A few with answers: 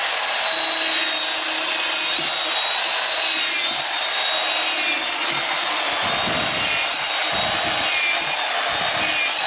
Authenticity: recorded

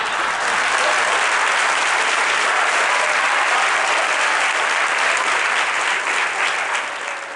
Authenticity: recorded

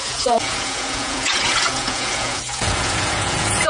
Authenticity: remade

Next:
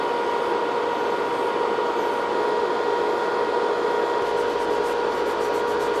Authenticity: recorded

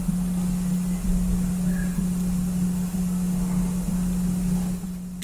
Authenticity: recorded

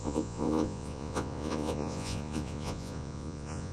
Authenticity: remade